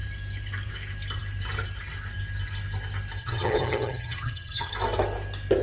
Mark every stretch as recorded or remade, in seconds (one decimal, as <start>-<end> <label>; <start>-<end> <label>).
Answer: 0.0-3.2 recorded; 3.2-4.7 remade; 4.7-5.6 recorded